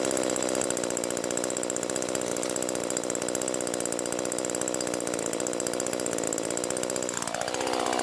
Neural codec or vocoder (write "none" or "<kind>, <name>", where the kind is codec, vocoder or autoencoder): none